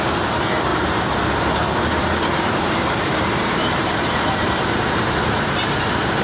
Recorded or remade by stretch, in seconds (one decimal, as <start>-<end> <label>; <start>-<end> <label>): 0.0-0.7 recorded; 0.7-1.2 remade; 1.2-2.0 recorded; 2.0-5.7 remade; 5.7-6.2 recorded